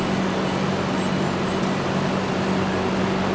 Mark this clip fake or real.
real